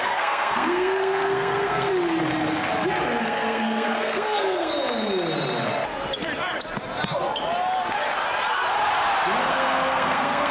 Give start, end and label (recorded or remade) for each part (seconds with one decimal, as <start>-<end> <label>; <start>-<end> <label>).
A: 0.0-1.9 remade; 1.9-3.2 recorded; 3.2-4.7 remade; 4.7-9.4 recorded; 9.4-10.5 remade